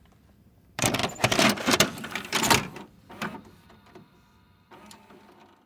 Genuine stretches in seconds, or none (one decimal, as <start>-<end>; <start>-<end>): 1.0-1.6